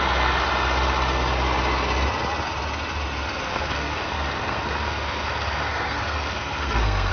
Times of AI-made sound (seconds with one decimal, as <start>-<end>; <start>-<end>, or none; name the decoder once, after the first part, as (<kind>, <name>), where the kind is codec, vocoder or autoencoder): 3.5-7.1 (codec, SNAC)